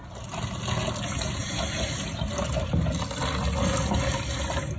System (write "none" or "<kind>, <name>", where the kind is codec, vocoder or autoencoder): none